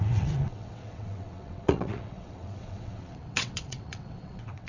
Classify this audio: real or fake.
fake